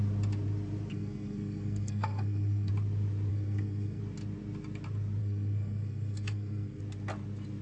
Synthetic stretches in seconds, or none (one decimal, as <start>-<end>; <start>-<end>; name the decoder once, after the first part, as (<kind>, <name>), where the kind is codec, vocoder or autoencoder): 0.9-2.7 (codec, SNAC); 3.3-4.0; 5.2-6.8